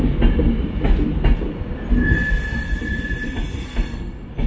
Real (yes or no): yes